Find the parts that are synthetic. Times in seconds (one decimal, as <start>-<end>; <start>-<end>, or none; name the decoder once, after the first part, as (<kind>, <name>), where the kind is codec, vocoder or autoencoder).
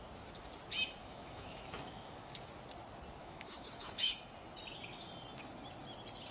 1.0-2.3 (autoencoder, DAC-VAE); 3.2-4.1